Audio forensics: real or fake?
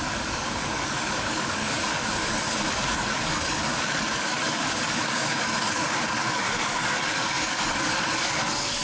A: fake